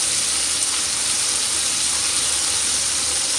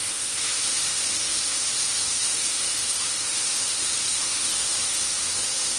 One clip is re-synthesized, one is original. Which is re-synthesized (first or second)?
second